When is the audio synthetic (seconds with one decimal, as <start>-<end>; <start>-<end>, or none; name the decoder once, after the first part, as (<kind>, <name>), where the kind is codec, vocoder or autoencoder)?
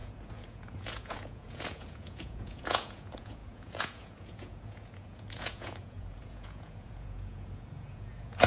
0.0-8.5 (vocoder, Vocos)